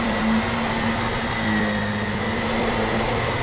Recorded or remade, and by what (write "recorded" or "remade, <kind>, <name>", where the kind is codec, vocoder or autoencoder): remade, vocoder, BigVGAN v2